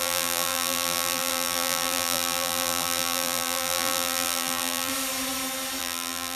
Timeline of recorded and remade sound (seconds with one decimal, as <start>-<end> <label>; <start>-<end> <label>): 0.0-4.9 remade; 4.9-5.8 recorded; 5.8-6.4 remade